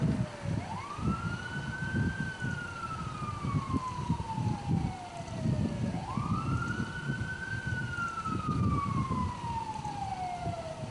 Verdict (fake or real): real